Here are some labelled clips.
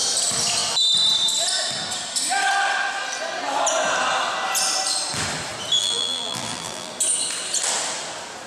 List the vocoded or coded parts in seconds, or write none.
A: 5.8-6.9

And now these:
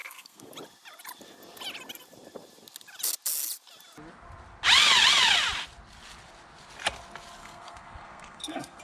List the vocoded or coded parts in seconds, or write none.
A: 0.0-0.5; 7.4-8.8